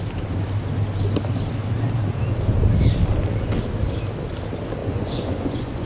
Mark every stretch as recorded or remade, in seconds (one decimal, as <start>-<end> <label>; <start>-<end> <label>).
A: 0.0-4.8 recorded; 4.8-5.9 remade